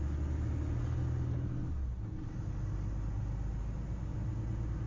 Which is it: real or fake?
real